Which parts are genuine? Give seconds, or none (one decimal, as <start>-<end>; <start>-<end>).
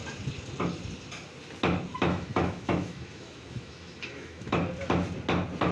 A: 0.0-1.9; 4.6-5.7